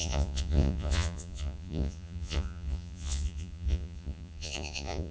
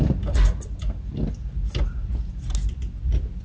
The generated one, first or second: first